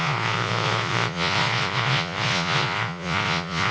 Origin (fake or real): fake